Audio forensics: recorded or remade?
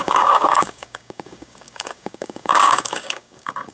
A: remade